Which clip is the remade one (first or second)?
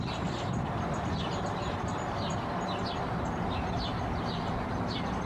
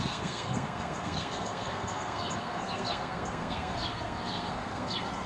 second